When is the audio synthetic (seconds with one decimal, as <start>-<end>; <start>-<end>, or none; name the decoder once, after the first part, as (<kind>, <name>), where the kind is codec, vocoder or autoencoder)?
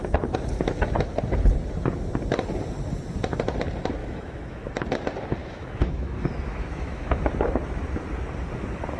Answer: 4.0-4.7 (autoencoder, DAC-VAE); 5.4-7.2